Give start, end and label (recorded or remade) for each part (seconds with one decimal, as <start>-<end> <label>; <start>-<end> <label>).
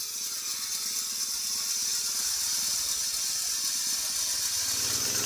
0.0-5.3 recorded